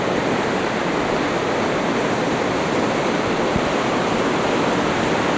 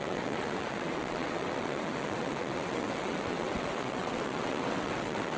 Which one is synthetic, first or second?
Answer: second